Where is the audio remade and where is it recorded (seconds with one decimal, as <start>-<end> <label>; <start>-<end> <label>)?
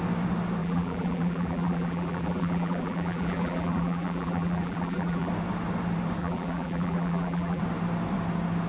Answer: 0.0-0.6 recorded; 0.6-5.3 remade; 5.3-6.2 recorded; 6.2-7.6 remade; 7.6-8.7 recorded